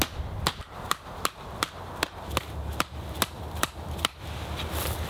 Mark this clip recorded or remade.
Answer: recorded